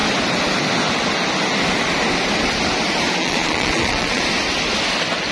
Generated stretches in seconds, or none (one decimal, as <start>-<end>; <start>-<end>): 3.2-4.2